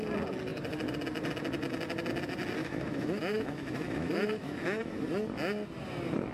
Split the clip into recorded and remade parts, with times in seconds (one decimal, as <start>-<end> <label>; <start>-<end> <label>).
0.0-2.6 recorded; 2.6-5.0 remade; 5.0-6.3 recorded